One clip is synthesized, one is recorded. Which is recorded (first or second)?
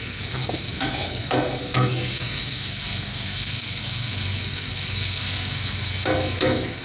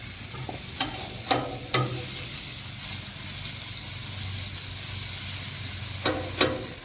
second